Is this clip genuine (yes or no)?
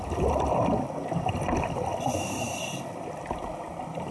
yes